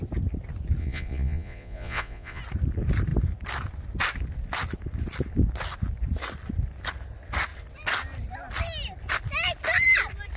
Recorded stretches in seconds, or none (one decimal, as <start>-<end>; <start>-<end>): 0.0-0.8; 2.4-10.4